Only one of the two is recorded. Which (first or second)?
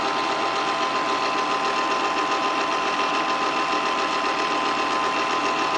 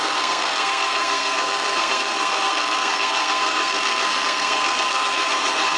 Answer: first